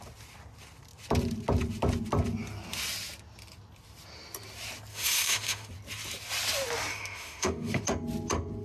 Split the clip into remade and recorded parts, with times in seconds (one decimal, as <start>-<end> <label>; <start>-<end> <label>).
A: 0.0-4.9 recorded; 4.9-5.7 remade; 5.7-6.9 recorded; 6.9-7.8 remade; 7.8-8.6 recorded

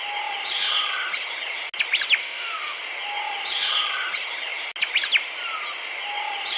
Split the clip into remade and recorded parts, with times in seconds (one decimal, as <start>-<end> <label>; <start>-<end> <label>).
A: 0.0-2.2 recorded; 2.2-2.8 remade; 2.8-6.6 recorded

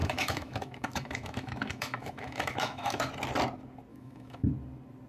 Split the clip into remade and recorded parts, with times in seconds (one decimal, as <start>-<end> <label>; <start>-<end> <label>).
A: 0.0-3.1 remade; 3.1-3.9 recorded; 3.9-4.5 remade; 4.5-5.1 recorded

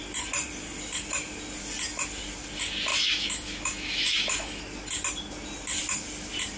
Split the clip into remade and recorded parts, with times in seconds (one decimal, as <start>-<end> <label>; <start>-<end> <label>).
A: 0.0-2.9 recorded; 2.9-4.6 remade; 4.6-6.6 recorded

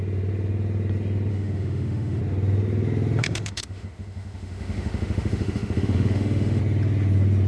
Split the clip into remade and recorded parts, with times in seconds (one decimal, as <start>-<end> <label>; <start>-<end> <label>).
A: 0.0-1.3 recorded; 1.3-2.2 remade; 2.2-3.2 recorded; 3.2-6.6 remade; 6.6-7.5 recorded